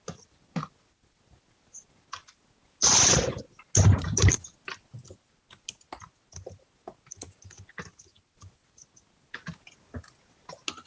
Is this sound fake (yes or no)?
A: no